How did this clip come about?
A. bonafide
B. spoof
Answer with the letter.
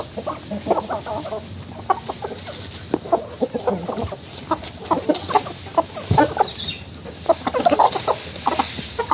A